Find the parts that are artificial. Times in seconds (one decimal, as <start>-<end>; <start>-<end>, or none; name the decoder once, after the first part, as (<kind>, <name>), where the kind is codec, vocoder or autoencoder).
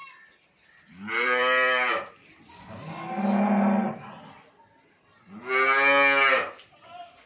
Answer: 0.0-2.7 (vocoder, BigVGAN v2)